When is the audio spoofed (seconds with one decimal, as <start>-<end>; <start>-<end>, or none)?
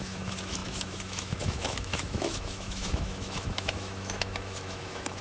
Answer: 0.0-5.2